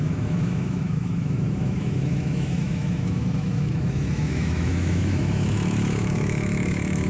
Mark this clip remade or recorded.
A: remade